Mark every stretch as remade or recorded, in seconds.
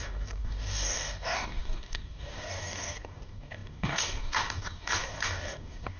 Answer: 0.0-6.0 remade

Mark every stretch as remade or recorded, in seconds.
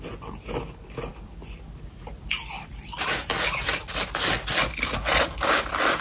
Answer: 0.0-6.0 recorded